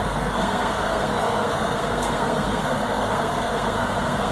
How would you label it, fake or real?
fake